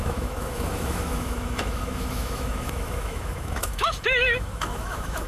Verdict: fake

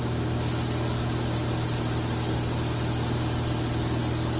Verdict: real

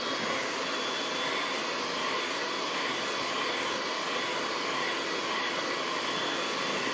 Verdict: real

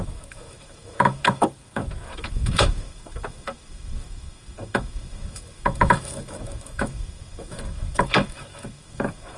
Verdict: fake